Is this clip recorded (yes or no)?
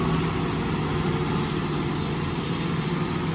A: yes